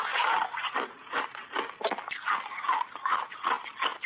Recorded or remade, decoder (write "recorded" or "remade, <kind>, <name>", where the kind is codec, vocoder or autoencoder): recorded